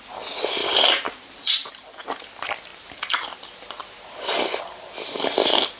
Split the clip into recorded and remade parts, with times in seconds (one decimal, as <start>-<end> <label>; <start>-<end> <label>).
0.0-0.6 recorded; 0.6-1.7 remade; 1.7-2.7 recorded; 2.7-4.6 remade; 4.6-5.8 recorded